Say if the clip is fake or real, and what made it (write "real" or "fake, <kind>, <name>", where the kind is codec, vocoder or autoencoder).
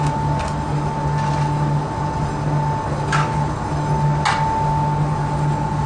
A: real